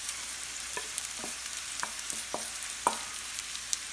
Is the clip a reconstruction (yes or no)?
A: yes